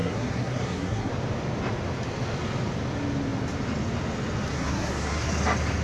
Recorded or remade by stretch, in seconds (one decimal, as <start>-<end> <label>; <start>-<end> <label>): 0.0-1.1 remade; 1.1-4.5 recorded; 4.5-5.3 remade; 5.3-5.8 recorded